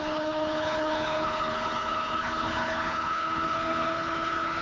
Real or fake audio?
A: fake